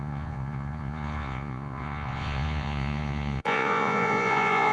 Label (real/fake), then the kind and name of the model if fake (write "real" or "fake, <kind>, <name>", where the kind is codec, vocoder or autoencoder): fake, vocoder, Vocos